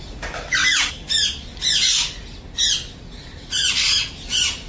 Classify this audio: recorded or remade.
recorded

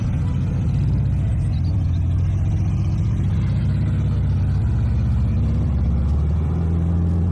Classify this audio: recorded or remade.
recorded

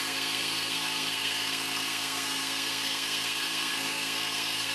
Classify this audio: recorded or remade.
remade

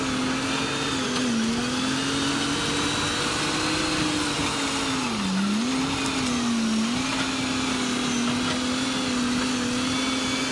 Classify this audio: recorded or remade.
recorded